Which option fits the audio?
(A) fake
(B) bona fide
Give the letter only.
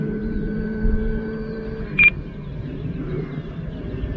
A